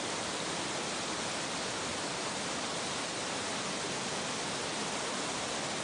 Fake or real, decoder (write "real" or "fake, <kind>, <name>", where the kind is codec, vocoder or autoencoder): real